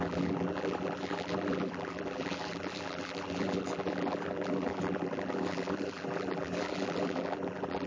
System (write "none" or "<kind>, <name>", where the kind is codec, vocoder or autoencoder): vocoder, BigVGAN v2